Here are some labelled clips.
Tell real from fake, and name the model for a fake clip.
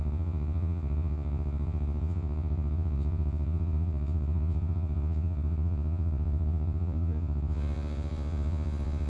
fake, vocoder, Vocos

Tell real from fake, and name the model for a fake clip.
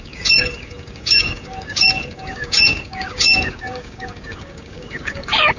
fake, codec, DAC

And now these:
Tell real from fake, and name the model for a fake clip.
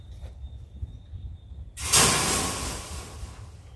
fake, vocoder, BigVGAN v2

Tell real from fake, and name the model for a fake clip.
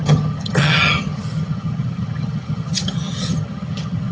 fake, vocoder, HiFi-GAN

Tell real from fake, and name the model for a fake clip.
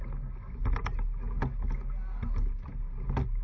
real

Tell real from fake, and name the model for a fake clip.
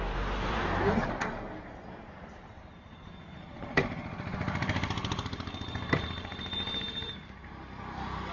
fake, vocoder, BigVGAN v2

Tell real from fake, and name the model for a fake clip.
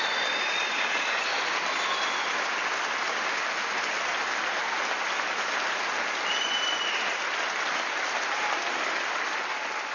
real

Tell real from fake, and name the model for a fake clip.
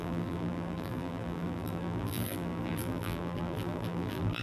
fake, vocoder, BigVGAN v2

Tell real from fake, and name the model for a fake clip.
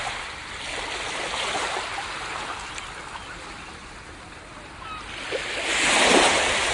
fake, vocoder, BigVGAN v2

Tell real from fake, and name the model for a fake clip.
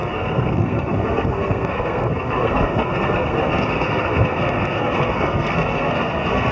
fake, codec, SNAC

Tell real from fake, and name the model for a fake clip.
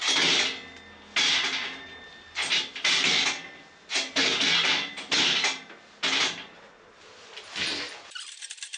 real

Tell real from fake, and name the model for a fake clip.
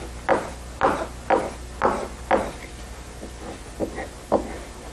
real